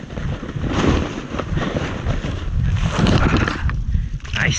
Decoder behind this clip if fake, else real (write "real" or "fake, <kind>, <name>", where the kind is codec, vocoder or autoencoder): real